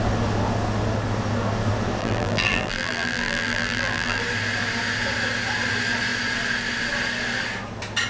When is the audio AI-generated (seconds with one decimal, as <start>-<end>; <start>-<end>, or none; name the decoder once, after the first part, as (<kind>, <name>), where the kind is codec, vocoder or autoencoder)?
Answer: 2.0-4.2 (vocoder, BigVGAN v2)